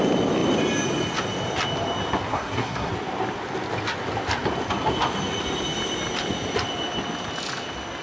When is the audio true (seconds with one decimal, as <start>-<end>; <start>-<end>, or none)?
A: 0.0-2.3; 2.9-8.0